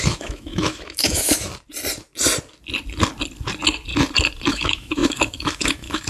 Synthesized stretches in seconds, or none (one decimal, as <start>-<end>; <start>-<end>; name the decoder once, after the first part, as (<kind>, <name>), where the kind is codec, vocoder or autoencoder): 0.0-1.5 (autoencoder, DAC-VAE); 4.5-6.1